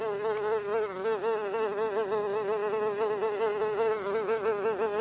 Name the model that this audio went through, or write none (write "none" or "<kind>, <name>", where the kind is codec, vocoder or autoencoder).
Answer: none